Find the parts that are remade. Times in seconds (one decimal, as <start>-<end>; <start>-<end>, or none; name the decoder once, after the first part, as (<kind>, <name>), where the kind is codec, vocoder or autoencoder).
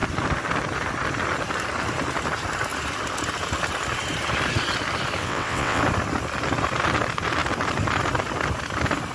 5.2-5.8 (vocoder, WaveNeXt)